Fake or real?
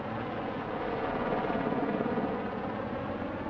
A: fake